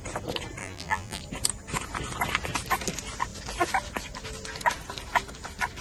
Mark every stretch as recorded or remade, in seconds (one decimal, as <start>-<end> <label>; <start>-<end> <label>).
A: 0.0-0.6 recorded; 0.6-1.2 remade; 1.2-5.8 recorded